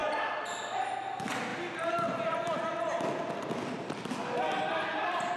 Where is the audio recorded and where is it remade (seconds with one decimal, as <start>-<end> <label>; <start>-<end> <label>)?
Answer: 0.0-5.4 recorded